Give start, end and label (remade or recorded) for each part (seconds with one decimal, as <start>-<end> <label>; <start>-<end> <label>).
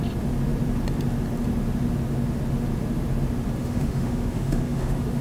0.0-3.6 recorded; 3.6-5.2 remade